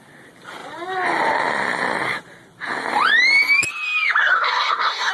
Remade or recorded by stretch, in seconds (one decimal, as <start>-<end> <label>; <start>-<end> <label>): 0.0-4.2 recorded; 4.2-5.1 remade